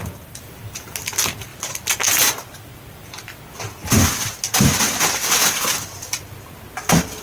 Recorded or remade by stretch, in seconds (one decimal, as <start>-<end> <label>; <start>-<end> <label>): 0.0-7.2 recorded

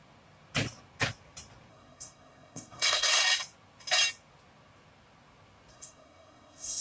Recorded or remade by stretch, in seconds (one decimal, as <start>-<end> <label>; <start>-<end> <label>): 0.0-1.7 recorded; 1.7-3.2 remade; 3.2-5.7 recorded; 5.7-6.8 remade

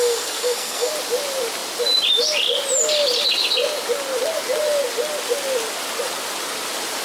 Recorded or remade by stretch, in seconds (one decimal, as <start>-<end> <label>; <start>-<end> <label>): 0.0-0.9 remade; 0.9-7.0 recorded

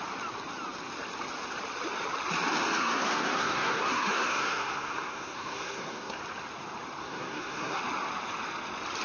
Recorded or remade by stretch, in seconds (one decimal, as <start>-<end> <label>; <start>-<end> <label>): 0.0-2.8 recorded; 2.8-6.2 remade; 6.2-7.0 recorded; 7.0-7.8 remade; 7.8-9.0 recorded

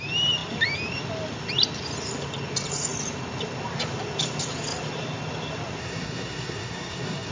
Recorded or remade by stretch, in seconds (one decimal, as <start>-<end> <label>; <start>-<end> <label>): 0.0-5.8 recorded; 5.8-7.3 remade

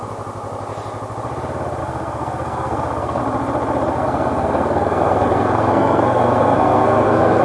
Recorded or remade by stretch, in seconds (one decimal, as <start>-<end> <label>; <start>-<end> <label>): 0.0-1.8 recorded; 1.8-3.2 remade; 3.2-3.9 recorded; 3.9-7.4 remade

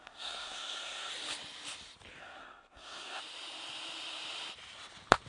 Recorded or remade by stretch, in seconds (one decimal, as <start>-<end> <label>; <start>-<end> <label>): 0.0-1.1 remade; 1.1-2.2 recorded; 2.2-3.2 remade; 3.2-5.3 recorded